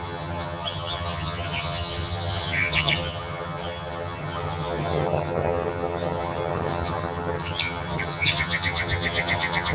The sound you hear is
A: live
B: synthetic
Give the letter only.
B